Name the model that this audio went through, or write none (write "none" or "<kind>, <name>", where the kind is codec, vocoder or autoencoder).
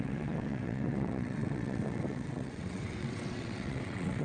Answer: vocoder, WaveNeXt